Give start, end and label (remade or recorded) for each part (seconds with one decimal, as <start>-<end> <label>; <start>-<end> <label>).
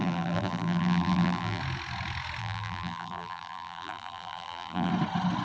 0.0-1.6 remade; 1.6-2.4 recorded; 2.4-4.9 remade; 4.9-5.4 recorded